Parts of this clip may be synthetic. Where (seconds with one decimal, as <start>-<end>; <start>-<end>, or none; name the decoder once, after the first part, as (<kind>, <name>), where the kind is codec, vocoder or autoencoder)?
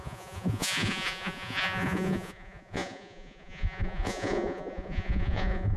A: 0.0-5.8 (vocoder, Vocos)